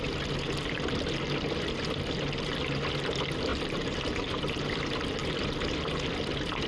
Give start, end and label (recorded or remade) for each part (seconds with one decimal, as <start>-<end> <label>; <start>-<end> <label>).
0.0-3.5 recorded; 3.5-4.3 remade; 4.3-6.7 recorded